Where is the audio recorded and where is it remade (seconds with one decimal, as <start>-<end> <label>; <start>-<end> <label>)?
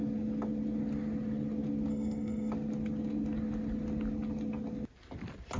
0.0-1.9 recorded; 1.9-2.5 remade; 2.5-5.6 recorded